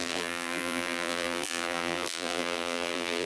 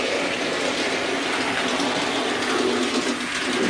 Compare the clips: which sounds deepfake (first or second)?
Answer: first